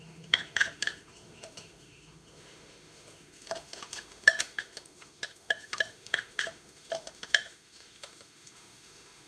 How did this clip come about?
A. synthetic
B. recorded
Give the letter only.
A